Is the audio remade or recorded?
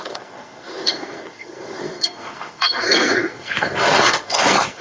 remade